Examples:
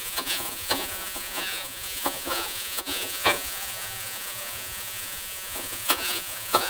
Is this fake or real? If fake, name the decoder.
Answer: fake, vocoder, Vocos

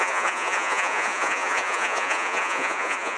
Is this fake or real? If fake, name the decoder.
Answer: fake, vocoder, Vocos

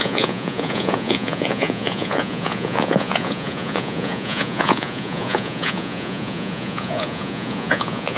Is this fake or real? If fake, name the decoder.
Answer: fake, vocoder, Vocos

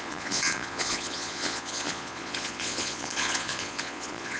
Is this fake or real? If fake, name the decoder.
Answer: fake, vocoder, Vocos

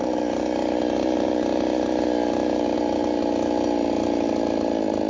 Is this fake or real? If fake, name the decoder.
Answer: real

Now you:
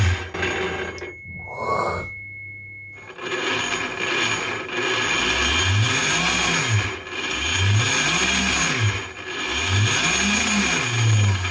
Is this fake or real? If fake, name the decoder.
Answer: real